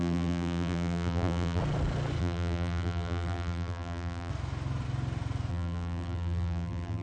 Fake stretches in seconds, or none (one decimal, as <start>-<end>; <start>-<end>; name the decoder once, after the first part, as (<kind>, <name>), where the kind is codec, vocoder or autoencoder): 0.0-1.6 (vocoder, BigVGAN v2); 2.2-4.3; 5.5-7.0